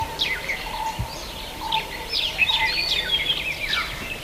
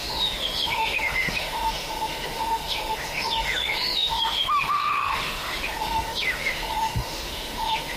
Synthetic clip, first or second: second